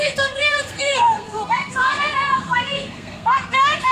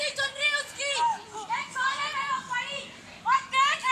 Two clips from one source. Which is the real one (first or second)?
second